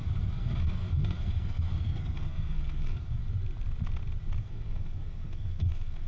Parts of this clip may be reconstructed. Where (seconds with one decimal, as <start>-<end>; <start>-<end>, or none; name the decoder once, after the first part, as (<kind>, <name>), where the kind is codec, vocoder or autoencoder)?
0.0-3.2 (codec, SNAC); 4.4-6.1